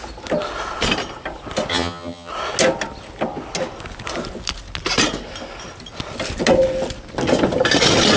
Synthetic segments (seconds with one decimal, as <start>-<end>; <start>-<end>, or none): 1.7-2.3